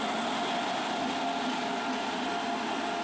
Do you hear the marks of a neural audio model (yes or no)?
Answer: no